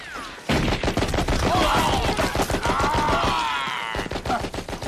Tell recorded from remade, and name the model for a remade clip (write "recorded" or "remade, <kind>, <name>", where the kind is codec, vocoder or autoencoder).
recorded